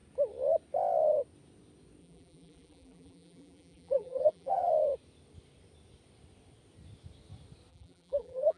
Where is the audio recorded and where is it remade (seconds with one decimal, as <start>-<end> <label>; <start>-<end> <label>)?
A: 0.0-2.0 recorded; 2.0-4.7 remade; 4.7-7.7 recorded; 7.7-8.6 remade